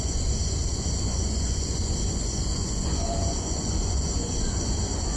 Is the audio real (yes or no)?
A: no